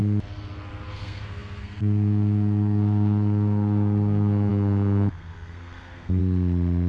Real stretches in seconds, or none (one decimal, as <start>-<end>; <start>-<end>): 0.0-0.9; 6.2-6.9